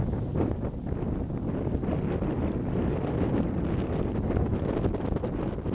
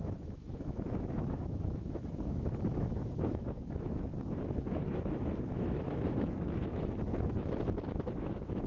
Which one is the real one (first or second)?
first